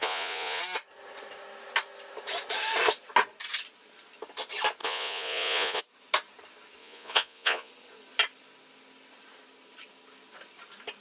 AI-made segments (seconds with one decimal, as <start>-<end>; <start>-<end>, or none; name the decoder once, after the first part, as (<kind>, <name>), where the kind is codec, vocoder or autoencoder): 0.0-0.6 (vocoder, Vocos); 4.8-5.8; 6.8-7.7